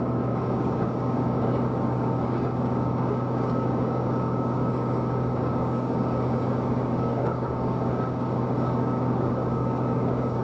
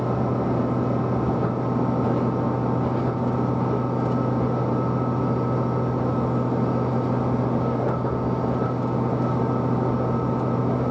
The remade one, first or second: first